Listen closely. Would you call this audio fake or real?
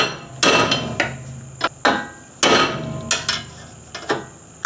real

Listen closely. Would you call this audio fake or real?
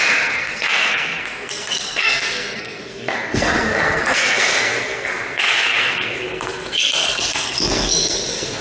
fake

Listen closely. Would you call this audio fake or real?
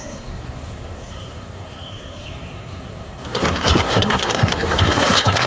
fake